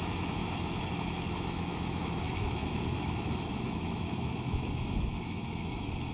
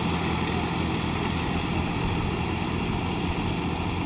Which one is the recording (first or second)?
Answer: second